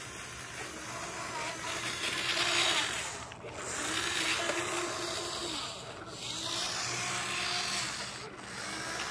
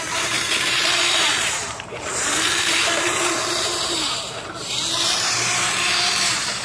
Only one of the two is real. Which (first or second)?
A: first